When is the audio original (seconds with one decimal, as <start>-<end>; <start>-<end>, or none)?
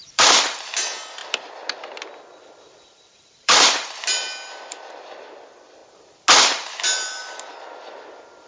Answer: 1.2-2.6; 5.8-6.4; 7.2-7.8